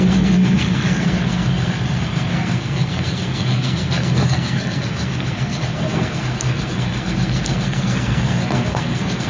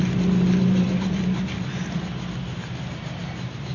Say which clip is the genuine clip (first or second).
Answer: second